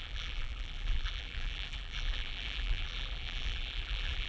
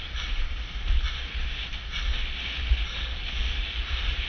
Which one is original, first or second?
second